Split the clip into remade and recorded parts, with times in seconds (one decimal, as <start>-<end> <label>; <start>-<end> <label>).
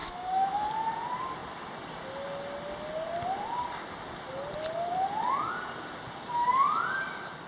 0.0-0.7 remade; 0.7-7.5 recorded